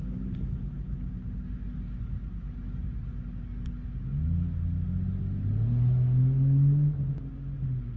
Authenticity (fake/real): real